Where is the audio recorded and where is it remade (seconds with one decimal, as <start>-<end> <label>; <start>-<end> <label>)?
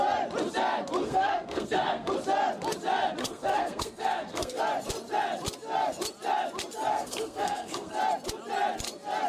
0.0-1.0 recorded; 1.0-2.1 remade; 2.1-3.2 recorded; 3.2-4.6 remade; 4.6-6.9 recorded; 6.9-8.0 remade; 8.0-9.3 recorded